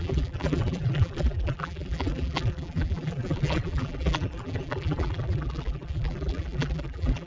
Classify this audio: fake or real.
fake